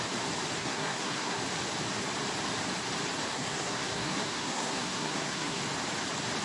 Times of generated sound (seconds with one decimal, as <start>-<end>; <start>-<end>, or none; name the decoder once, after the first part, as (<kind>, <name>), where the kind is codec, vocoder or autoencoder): 0.6-1.4 (codec, SNAC); 3.3-5.6

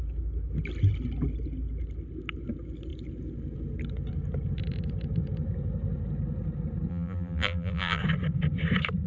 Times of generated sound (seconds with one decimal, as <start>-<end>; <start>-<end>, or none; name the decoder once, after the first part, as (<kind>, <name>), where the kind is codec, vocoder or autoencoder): 6.9-8.0 (vocoder, BigVGAN v2)

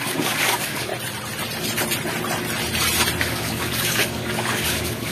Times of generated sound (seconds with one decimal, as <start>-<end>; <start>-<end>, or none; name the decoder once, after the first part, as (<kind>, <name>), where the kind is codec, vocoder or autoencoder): 0.0-0.9 (codec, DAC); 3.2-5.1

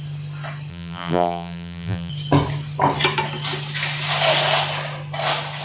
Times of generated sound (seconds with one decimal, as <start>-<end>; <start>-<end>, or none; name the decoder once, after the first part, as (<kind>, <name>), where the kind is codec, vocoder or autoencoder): 0.7-2.1 (vocoder, BigVGAN v2)

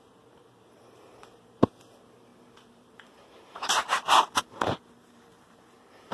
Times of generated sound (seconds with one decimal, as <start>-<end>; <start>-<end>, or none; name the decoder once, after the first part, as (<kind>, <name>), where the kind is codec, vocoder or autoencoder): 0.0-6.1 (vocoder, BigVGAN v2)

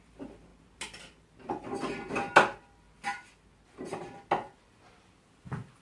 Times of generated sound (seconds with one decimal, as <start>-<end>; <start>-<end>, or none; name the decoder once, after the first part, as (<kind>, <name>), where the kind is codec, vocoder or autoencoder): none

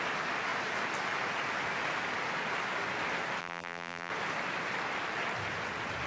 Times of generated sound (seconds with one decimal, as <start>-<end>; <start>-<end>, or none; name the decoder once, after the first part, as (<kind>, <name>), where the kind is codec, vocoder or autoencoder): 3.4-4.1 (vocoder, BigVGAN v2)